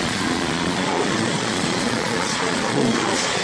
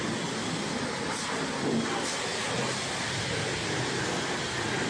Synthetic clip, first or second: first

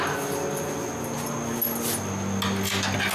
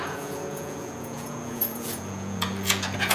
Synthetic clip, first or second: second